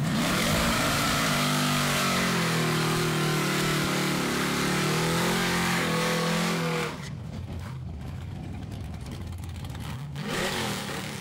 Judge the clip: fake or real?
fake